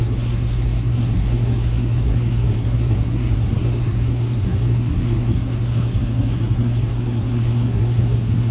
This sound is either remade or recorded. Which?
remade